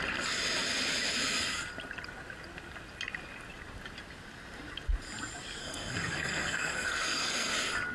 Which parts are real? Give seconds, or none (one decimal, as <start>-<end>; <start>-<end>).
0.0-5.6; 7.5-7.9